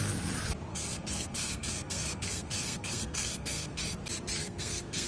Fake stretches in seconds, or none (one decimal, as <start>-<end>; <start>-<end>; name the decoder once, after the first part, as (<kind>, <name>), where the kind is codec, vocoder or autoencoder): 0.7-3.8 (codec, SNAC); 4.4-5.1